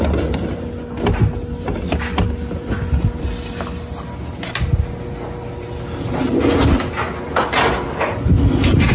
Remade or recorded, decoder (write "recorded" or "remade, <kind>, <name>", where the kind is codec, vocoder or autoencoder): recorded